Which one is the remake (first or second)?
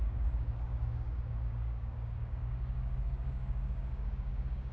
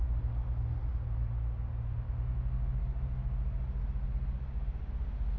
first